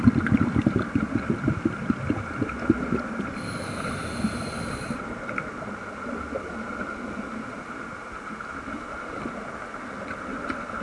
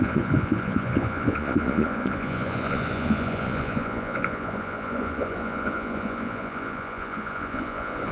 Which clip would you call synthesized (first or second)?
second